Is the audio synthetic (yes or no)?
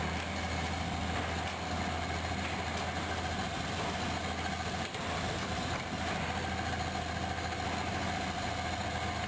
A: no